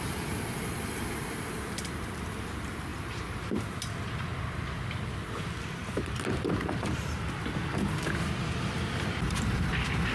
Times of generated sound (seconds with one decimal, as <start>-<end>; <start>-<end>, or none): 0.0-2.9; 3.7-10.1